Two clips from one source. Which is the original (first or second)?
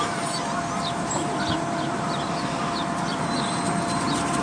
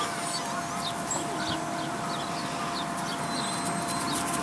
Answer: second